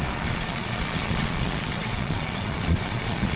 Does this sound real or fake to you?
fake